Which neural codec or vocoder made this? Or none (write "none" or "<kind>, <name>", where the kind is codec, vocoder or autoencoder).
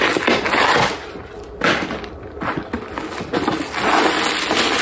none